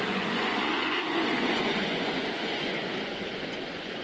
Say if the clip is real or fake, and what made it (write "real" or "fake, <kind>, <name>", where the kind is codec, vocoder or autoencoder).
fake, vocoder, Vocos